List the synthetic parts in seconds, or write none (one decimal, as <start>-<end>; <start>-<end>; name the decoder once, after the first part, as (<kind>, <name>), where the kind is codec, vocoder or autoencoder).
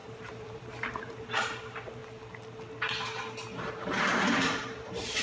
0.0-2.0 (vocoder, BigVGAN v2); 3.7-5.2